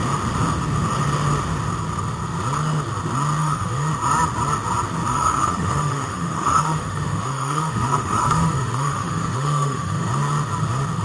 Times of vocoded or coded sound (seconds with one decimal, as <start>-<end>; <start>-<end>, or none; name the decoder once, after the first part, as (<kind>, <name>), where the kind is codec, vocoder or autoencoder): 3.4-3.9 (autoencoder, DAC-VAE); 5.1-10.1